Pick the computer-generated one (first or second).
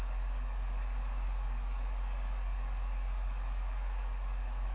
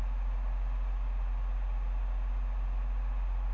first